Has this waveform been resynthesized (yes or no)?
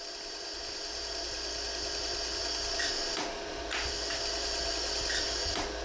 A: no